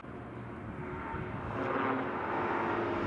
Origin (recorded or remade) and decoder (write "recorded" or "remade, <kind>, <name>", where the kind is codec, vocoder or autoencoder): recorded